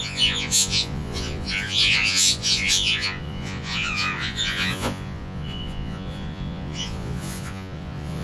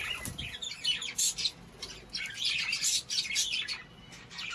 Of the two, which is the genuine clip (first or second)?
second